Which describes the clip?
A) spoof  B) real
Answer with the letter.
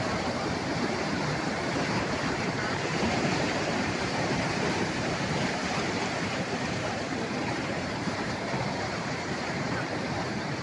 A